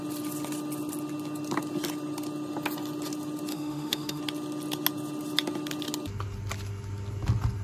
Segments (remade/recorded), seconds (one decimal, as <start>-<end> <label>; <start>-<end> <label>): 0.0-3.5 recorded; 3.5-4.2 remade; 4.2-7.6 recorded